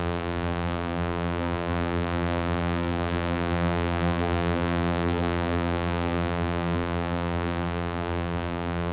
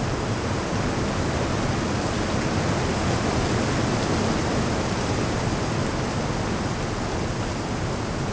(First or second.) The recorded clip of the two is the second